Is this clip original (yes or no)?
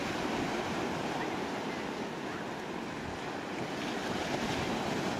yes